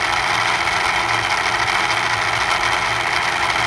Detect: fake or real real